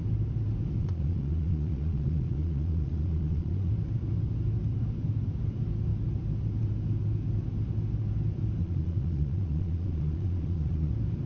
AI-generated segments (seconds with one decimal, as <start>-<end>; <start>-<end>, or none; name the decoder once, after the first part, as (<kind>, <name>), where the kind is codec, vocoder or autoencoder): 0.8-3.7 (vocoder, Vocos); 8.6-10.9